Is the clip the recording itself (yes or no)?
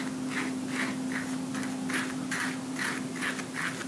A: yes